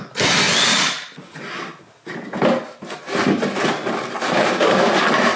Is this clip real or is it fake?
real